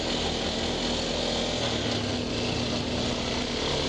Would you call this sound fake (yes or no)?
no